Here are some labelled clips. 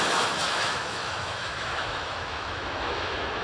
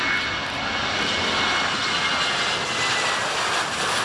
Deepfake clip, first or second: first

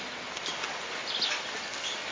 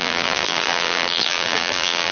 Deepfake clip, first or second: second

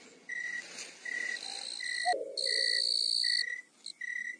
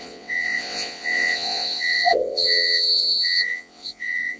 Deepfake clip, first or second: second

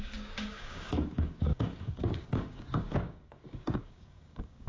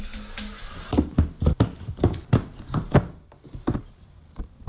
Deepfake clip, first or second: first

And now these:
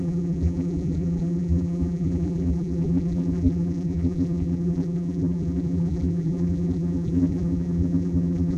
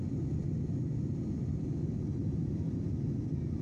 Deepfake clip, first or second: first